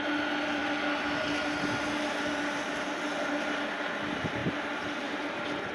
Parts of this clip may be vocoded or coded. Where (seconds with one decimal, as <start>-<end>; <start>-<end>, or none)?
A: 4.4-5.0

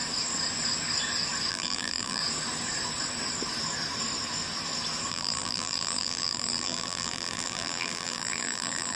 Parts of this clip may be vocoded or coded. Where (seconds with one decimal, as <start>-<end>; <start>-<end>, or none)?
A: 1.5-2.2; 5.1-9.0

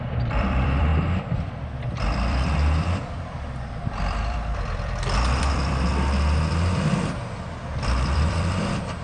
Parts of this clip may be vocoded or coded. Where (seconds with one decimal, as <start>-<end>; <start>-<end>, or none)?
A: 0.0-0.9; 1.4-5.9; 6.5-9.0

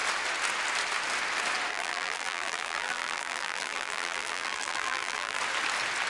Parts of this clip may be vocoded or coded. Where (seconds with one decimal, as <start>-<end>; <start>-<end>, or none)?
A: 1.7-5.4